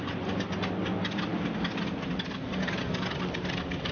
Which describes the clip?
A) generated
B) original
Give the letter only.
B